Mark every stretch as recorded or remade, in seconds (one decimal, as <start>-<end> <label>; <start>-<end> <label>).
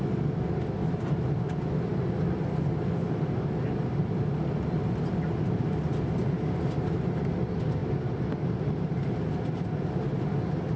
0.0-10.8 recorded